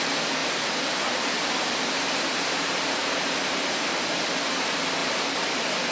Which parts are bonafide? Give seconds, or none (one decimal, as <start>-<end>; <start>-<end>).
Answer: 0.0-0.4; 3.9-5.0